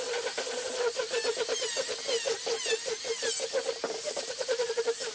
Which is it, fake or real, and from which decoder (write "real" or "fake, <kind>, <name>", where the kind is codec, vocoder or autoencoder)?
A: real